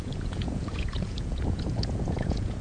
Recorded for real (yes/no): no